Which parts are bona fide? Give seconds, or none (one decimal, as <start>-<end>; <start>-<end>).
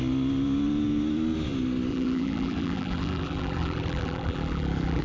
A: 0.0-1.9